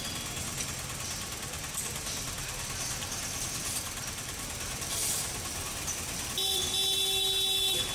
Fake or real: real